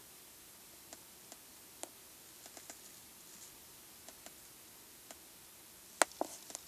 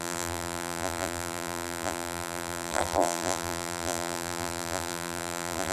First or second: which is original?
first